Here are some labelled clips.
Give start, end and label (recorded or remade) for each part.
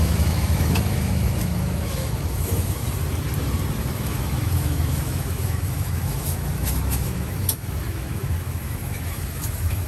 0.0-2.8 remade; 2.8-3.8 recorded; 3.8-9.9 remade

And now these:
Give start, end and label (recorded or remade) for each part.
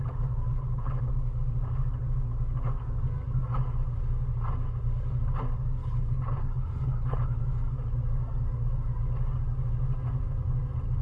0.0-0.5 recorded; 0.5-1.1 remade; 1.1-5.8 recorded; 5.8-7.4 remade; 7.4-11.0 recorded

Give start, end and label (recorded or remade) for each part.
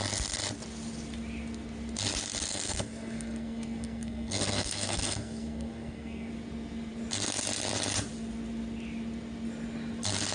0.0-2.5 recorded; 2.5-6.3 remade; 6.3-10.3 recorded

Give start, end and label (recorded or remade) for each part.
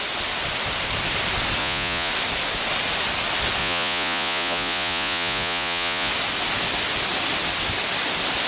0.0-1.6 recorded; 1.6-2.1 remade; 2.1-3.6 recorded; 3.6-6.1 remade; 6.1-8.5 recorded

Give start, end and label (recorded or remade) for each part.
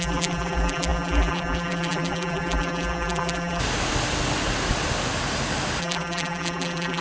0.0-3.6 remade; 3.6-5.8 recorded; 5.8-7.0 remade